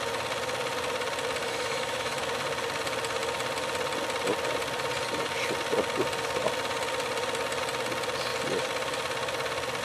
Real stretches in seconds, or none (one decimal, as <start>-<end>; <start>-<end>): 0.0-1.4; 2.2-9.8